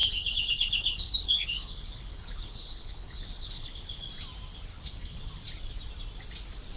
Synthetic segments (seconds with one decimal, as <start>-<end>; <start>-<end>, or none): 0.0-4.1; 4.7-5.3

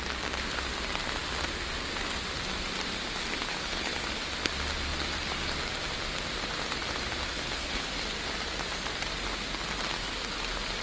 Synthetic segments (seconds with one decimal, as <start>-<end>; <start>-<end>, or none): 3.5-4.0; 7.3-7.9

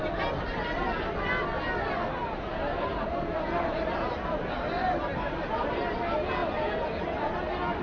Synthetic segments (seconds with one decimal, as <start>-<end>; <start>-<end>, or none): none

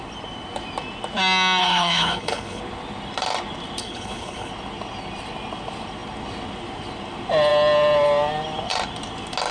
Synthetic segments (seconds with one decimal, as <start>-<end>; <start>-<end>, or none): 1.6-2.6; 3.8-4.5

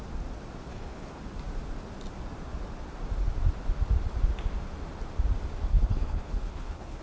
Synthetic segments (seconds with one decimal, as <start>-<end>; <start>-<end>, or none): 0.7-1.2; 5.7-7.0

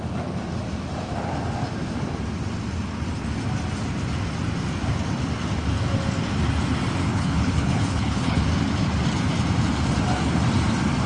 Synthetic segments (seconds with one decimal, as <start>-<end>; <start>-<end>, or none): 7.0-8.4

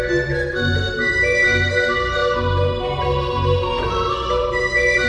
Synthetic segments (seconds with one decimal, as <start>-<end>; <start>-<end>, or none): none